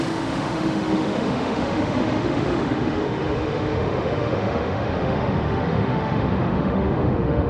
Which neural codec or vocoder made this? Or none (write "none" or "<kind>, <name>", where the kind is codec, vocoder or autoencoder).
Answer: autoencoder, DAC-VAE